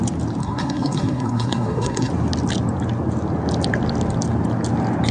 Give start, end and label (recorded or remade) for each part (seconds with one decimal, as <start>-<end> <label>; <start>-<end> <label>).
0.0-0.4 recorded; 0.4-2.1 remade; 2.1-5.1 recorded